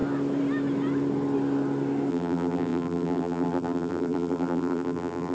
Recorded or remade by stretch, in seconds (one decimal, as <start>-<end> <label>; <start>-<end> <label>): 0.0-2.1 recorded; 2.1-5.3 remade